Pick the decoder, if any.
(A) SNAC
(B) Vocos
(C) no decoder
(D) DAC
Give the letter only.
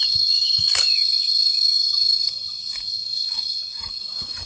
D